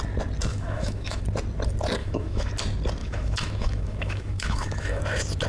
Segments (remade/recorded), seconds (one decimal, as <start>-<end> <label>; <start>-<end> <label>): 0.0-0.5 recorded; 0.5-1.2 remade; 1.2-2.0 recorded; 2.0-2.5 remade; 2.5-3.0 recorded; 3.0-5.0 remade; 5.0-5.5 recorded